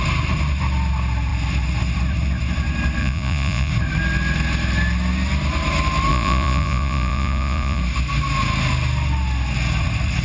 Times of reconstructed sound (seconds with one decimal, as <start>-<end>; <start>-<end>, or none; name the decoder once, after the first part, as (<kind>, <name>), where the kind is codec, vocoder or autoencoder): 3.0-3.7 (vocoder, Vocos); 6.1-7.8